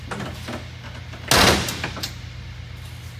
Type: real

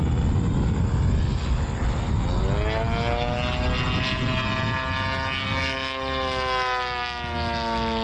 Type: real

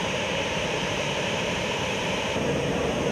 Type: fake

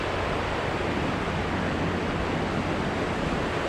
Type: real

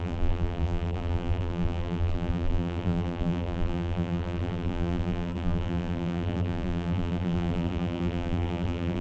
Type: fake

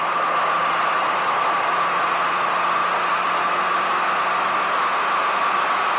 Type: real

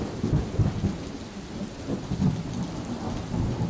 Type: real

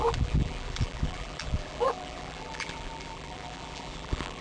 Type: fake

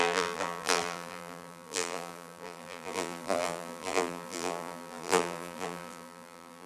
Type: fake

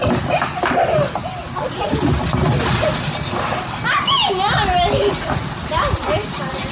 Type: real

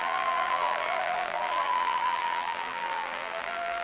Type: fake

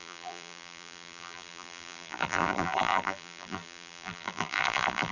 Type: fake